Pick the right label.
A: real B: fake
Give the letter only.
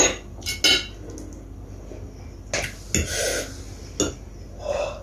A